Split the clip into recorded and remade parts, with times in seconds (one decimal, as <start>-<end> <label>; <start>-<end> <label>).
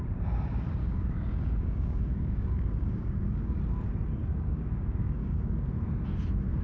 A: 0.0-0.8 recorded; 0.8-3.6 remade; 3.6-4.2 recorded; 4.2-5.5 remade; 5.5-6.6 recorded